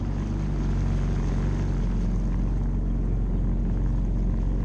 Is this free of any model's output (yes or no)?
yes